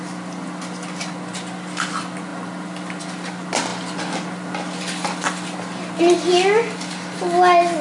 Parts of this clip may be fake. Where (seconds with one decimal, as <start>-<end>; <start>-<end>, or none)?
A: none